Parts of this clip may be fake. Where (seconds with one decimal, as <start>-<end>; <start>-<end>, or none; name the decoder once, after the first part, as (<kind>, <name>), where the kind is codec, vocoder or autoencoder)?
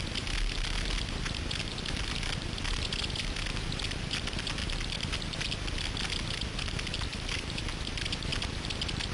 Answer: 7.1-7.6 (vocoder, BigVGAN v2)